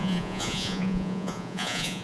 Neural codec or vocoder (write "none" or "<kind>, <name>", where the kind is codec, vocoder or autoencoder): vocoder, Vocos